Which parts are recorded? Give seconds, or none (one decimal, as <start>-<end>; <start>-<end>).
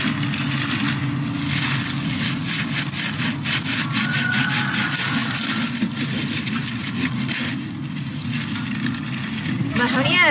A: 0.0-10.3